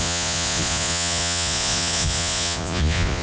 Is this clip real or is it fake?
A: fake